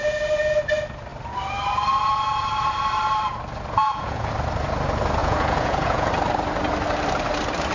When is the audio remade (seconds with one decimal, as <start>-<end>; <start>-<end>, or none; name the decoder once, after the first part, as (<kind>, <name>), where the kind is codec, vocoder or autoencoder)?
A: 3.8-4.3 (vocoder, Vocos); 5.2-6.1